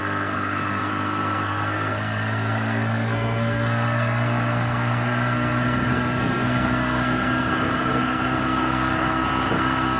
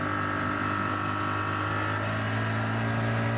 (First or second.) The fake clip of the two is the first